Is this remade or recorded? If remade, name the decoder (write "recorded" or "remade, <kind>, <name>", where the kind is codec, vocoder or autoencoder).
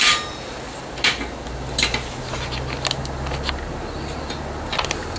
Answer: recorded